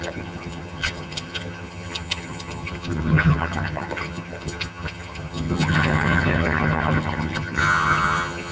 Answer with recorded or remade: remade